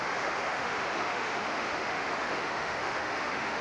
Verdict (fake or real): fake